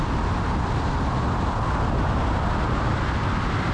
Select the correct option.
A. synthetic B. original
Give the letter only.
B